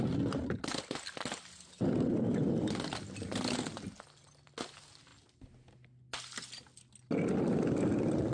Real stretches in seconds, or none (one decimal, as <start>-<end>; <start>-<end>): 0.0-8.3